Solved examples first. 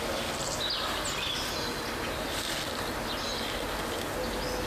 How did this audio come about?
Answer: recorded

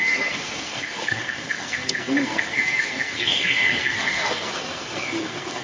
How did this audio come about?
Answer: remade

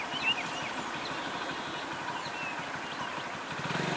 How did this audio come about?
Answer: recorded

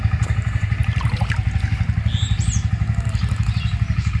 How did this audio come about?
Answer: recorded